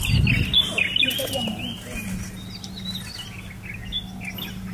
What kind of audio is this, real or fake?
real